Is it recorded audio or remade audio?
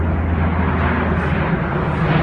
recorded